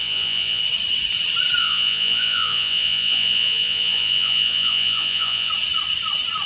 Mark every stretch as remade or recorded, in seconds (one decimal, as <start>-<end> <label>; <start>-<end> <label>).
0.0-0.6 remade; 0.6-1.6 recorded; 1.6-5.5 remade; 5.5-6.5 recorded